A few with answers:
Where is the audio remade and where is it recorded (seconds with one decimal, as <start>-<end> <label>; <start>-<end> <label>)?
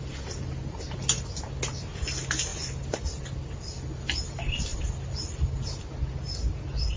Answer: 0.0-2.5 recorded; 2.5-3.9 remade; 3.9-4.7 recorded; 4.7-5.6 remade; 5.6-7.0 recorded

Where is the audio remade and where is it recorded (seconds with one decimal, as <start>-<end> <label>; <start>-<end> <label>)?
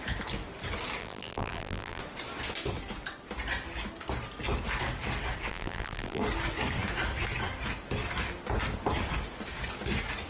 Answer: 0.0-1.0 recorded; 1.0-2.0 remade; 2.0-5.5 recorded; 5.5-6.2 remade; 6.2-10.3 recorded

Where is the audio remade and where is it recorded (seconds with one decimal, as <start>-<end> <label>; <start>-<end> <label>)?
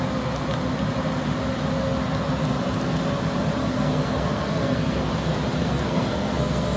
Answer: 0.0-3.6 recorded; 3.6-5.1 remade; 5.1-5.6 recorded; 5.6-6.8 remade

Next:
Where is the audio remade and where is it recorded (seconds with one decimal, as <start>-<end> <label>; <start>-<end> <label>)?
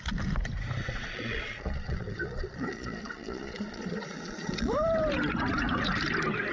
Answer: 0.0-0.8 recorded; 0.8-4.7 remade; 4.7-6.5 recorded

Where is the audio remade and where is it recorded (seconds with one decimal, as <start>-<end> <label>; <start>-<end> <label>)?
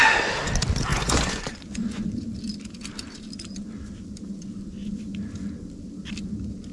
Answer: 0.0-0.9 recorded; 0.9-2.1 remade; 2.1-6.7 recorded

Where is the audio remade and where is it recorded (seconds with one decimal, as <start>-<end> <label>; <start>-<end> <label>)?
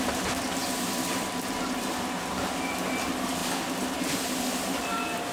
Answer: 0.0-5.3 remade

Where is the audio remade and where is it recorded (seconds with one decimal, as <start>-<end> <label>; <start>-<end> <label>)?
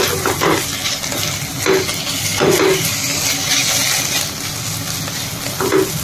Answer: 0.0-6.0 recorded